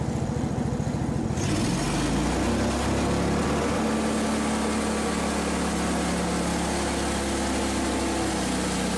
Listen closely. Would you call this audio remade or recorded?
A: recorded